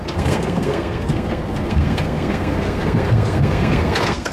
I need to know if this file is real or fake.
fake